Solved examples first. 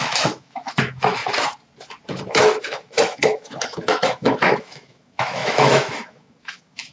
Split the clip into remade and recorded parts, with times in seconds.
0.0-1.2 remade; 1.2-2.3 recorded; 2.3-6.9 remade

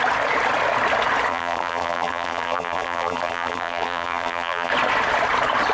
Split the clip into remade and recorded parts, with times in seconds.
0.0-1.3 recorded; 1.3-4.7 remade; 4.7-5.7 recorded

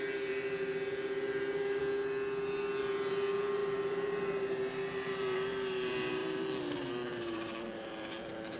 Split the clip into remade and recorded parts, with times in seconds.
0.0-1.8 remade; 1.8-2.8 recorded; 2.8-8.6 remade

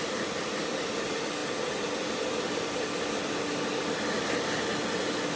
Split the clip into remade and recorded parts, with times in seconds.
0.0-5.4 recorded

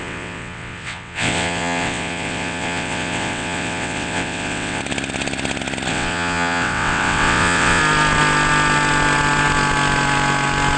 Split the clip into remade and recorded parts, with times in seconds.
0.0-4.8 remade; 4.8-5.9 recorded; 5.9-7.8 remade; 7.8-10.8 recorded

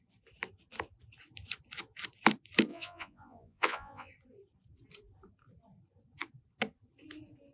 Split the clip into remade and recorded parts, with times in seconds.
0.0-2.7 recorded; 2.7-4.1 remade; 4.1-7.5 recorded

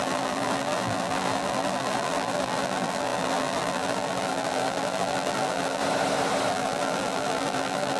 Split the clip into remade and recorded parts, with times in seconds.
0.0-5.8 remade; 5.8-6.5 recorded; 6.5-8.0 remade

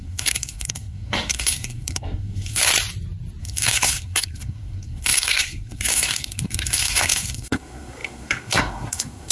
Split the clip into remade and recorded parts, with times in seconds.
0.0-2.7 remade; 2.7-3.4 recorded; 3.4-9.3 remade